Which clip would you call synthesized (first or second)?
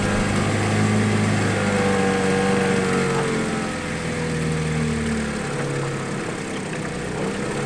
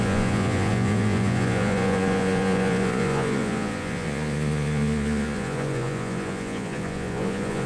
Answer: second